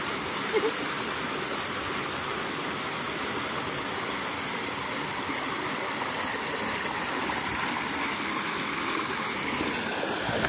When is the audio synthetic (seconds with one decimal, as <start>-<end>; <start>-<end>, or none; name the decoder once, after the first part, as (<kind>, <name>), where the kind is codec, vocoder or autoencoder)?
none